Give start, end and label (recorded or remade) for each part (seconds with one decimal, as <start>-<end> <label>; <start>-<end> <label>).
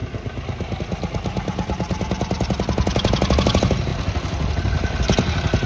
0.0-5.7 recorded